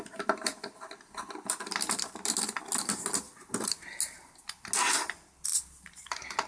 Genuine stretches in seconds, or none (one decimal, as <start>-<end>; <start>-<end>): 0.0-6.5

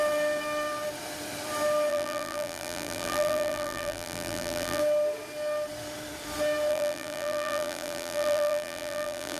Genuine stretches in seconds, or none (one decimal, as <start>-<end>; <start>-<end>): 0.0-1.9; 4.8-6.7

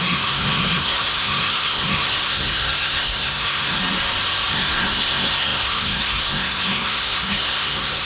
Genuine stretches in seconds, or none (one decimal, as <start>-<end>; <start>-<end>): 3.8-4.5

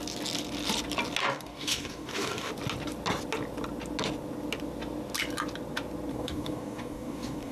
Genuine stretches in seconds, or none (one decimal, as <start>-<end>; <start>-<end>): 0.0-1.2; 2.5-6.1

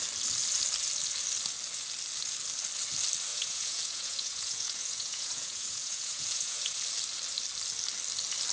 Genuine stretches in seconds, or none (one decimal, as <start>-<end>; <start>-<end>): 0.0-3.3; 6.8-8.5

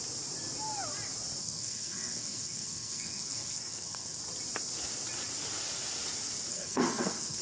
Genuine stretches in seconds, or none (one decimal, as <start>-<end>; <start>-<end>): 0.0-1.4; 4.2-6.5